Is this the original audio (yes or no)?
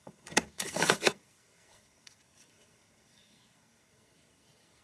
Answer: no